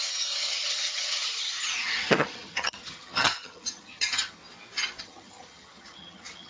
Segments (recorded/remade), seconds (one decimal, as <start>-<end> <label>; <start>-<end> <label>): 0.0-4.4 remade; 4.4-5.0 recorded; 5.0-6.5 remade